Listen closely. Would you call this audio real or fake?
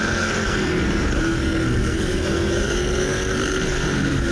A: fake